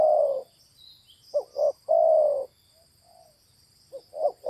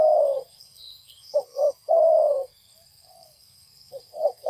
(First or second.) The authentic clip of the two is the first